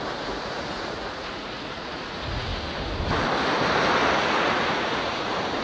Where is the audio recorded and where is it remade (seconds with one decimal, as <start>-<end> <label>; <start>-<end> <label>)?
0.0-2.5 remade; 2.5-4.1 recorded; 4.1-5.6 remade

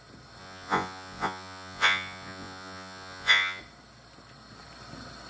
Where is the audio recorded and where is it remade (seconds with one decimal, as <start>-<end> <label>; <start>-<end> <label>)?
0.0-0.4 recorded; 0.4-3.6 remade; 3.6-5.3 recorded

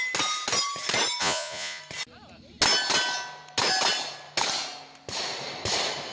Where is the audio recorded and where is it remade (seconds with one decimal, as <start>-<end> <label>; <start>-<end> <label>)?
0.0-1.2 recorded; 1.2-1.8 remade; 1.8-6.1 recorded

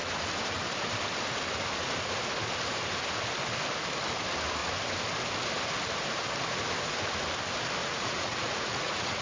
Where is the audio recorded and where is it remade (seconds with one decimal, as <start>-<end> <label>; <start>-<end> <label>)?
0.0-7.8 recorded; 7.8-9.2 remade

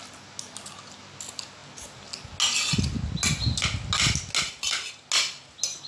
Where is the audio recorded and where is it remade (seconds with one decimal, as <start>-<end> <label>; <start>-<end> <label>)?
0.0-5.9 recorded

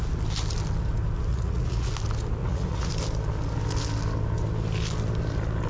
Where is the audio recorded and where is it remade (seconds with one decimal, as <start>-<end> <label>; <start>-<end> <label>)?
0.0-1.3 recorded; 1.3-1.9 remade; 1.9-2.4 recorded; 2.4-2.9 remade; 2.9-5.7 recorded